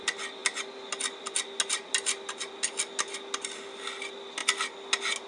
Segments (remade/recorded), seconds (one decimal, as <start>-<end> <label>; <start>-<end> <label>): 0.0-5.3 recorded